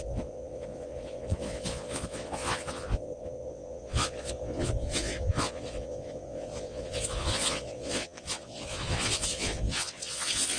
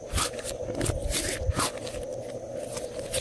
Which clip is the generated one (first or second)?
first